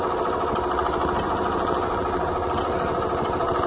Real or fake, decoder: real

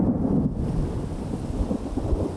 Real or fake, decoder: real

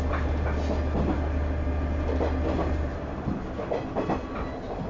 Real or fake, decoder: real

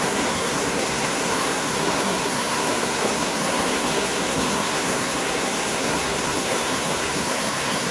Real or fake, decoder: fake, codec, SNAC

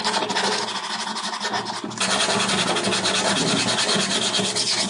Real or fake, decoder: real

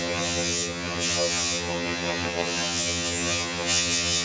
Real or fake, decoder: fake, vocoder, HiFi-GAN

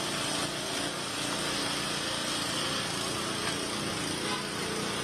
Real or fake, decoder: real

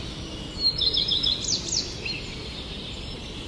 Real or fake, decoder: real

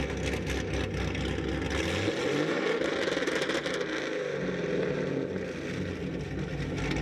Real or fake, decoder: real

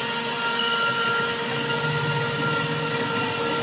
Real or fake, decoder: real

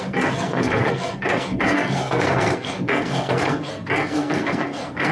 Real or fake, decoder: fake, codec, SNAC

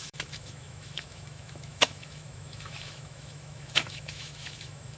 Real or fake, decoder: fake, autoencoder, DAC-VAE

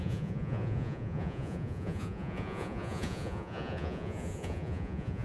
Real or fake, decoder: fake, vocoder, Vocos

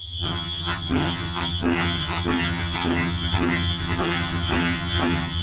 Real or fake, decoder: fake, vocoder, HiFi-GAN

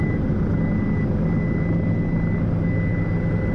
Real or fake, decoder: real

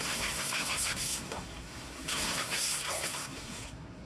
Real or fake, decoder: fake, codec, SNAC